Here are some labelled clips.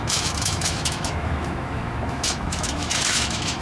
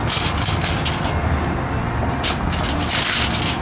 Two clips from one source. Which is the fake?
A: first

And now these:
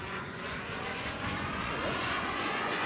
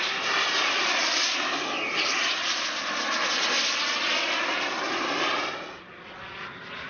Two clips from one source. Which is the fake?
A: first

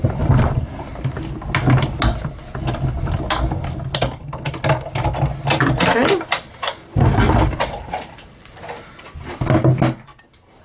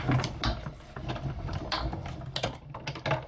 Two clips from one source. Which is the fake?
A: second